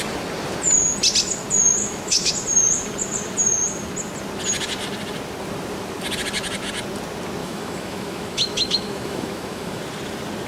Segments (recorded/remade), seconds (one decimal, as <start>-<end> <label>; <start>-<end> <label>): 0.0-1.8 recorded; 1.8-2.3 remade; 2.3-7.4 recorded; 7.4-9.8 remade; 9.8-10.5 recorded

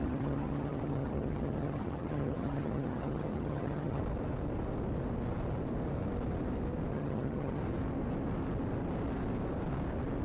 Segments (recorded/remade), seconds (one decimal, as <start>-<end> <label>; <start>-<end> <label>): 0.0-4.0 remade; 4.0-6.9 recorded; 6.9-7.6 remade; 7.6-10.2 recorded

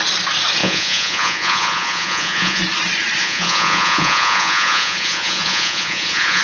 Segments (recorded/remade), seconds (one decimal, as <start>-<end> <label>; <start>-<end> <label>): 0.0-0.6 recorded; 0.6-2.6 remade; 2.6-3.2 recorded; 3.2-6.4 remade

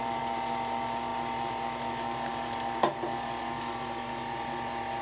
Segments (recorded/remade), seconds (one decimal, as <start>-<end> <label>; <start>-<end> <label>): 0.0-5.0 recorded